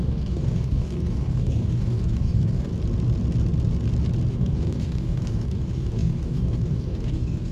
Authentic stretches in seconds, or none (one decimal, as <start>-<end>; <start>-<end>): 2.7-4.3